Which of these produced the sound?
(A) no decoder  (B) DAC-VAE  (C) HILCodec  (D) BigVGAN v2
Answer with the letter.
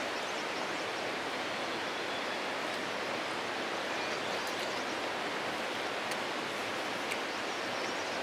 A